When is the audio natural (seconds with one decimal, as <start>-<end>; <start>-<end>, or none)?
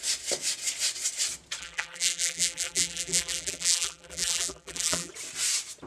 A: 0.0-1.6; 5.1-5.9